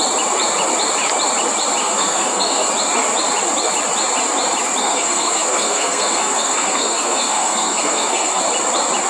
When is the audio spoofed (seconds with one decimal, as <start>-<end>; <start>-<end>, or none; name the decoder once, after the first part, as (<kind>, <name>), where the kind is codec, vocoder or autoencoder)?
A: 1.8-2.7 (codec, SNAC); 4.8-8.4